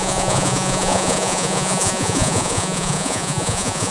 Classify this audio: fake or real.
fake